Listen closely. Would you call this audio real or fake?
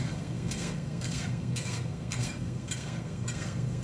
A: fake